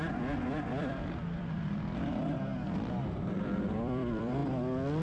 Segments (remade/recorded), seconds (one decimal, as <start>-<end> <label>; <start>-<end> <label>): 0.0-2.5 remade; 2.5-3.3 recorded; 3.3-4.4 remade; 4.4-5.0 recorded

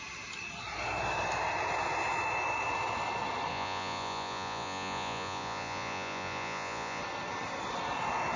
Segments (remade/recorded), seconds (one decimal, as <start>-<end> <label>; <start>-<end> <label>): 0.0-3.5 recorded; 3.5-7.0 remade; 7.0-8.4 recorded

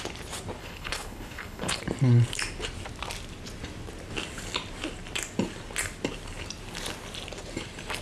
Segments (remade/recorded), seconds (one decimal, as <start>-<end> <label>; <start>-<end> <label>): 0.0-0.6 recorded; 0.6-1.8 remade; 1.8-8.0 recorded

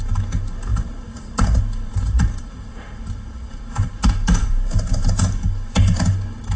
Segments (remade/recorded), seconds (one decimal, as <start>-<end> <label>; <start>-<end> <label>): 0.0-0.7 recorded; 0.7-4.0 remade; 4.0-4.4 recorded; 4.4-6.1 remade; 6.1-6.6 recorded

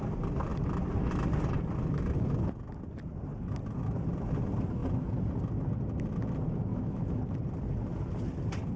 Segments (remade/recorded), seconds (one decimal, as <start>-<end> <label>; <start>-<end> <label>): 0.0-6.7 recorded; 6.7-7.2 remade; 7.2-8.8 recorded

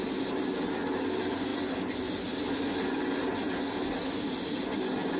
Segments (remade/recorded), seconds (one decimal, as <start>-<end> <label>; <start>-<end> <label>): 0.0-5.2 recorded

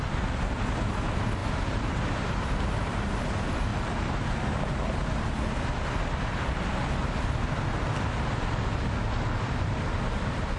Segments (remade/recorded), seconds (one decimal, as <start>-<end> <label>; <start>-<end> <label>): 0.0-1.4 recorded; 1.4-3.1 remade; 3.1-3.7 recorded; 3.7-4.3 remade; 4.3-10.6 recorded

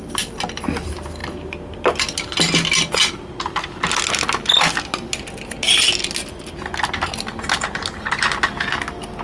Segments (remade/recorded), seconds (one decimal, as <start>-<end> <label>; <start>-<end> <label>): 0.0-9.2 recorded